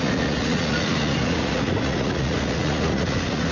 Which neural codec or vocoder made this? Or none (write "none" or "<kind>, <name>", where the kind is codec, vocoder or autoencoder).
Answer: vocoder, Vocos